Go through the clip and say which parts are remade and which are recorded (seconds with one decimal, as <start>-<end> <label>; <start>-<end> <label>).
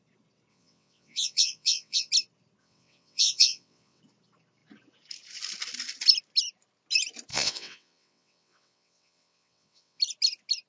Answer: 0.0-0.5 recorded; 0.5-2.1 remade; 2.1-2.6 recorded; 2.6-4.0 remade; 4.0-7.3 recorded; 7.3-10.0 remade; 10.0-10.7 recorded